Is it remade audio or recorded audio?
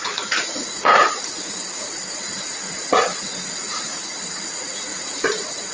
remade